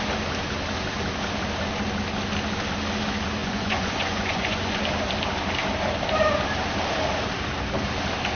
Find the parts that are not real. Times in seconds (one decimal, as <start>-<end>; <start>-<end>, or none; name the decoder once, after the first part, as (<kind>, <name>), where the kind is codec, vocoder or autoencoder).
3.4-4.8 (vocoder, Vocos)